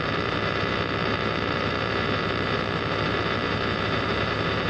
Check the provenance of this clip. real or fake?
fake